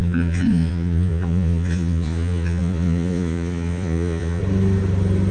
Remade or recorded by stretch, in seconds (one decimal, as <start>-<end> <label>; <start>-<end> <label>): 0.0-4.4 remade; 4.4-5.3 recorded